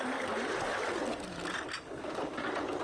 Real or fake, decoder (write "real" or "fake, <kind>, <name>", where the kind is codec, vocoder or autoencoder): real